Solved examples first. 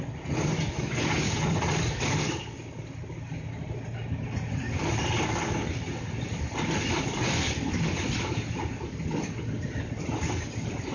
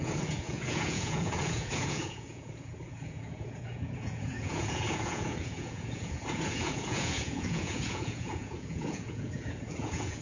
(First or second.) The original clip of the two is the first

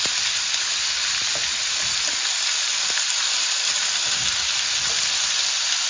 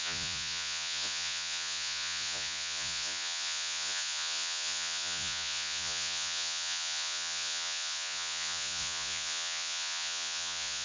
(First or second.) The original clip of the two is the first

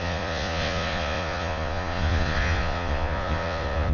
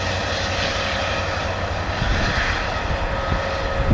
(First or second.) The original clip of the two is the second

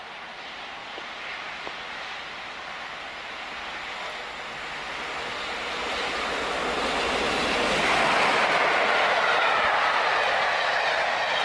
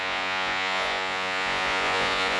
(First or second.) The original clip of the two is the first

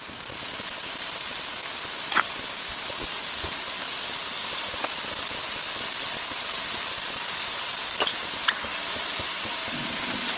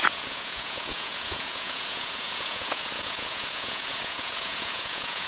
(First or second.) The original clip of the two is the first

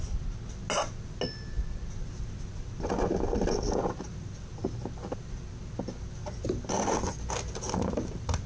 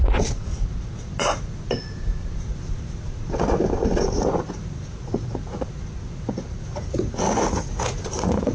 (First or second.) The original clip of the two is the first